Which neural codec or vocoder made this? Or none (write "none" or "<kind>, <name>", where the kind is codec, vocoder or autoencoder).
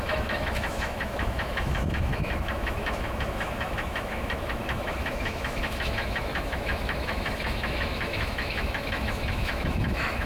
autoencoder, DAC-VAE